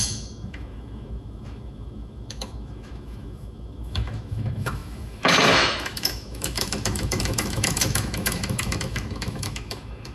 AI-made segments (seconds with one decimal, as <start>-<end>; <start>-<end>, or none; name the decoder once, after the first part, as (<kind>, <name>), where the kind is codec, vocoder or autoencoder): 0.0-10.1 (autoencoder, DAC-VAE)